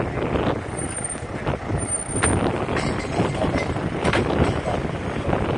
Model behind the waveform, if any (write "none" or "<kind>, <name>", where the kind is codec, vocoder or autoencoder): none